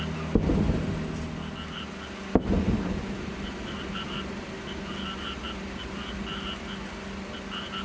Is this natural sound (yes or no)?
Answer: yes